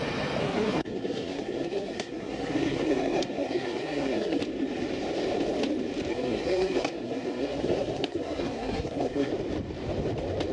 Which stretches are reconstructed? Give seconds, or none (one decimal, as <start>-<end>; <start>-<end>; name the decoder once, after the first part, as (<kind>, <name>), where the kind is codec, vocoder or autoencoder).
0.4-4.4 (codec, SNAC); 6.1-9.3